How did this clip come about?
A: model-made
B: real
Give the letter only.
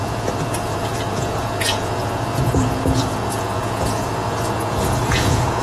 A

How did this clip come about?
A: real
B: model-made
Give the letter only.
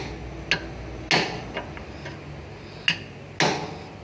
A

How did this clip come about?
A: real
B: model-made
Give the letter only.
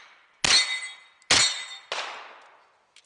A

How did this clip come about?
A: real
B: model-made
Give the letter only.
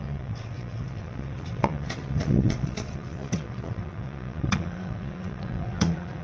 B